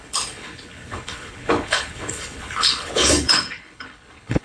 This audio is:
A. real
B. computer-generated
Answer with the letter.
B